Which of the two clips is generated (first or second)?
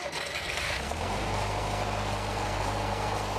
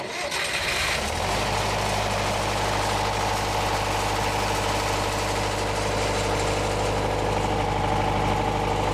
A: first